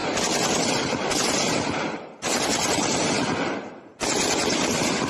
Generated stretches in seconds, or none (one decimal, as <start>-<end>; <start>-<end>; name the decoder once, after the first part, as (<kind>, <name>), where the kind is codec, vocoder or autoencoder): none